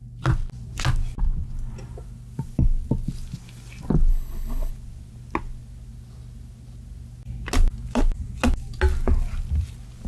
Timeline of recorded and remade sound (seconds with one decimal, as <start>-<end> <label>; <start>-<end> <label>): 0.0-4.1 recorded; 4.1-4.7 remade; 4.7-10.1 recorded